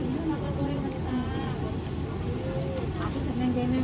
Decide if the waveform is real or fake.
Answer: real